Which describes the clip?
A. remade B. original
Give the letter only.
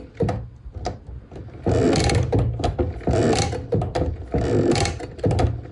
B